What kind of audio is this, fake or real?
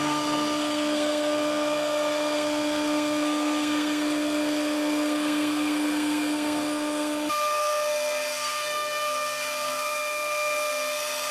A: fake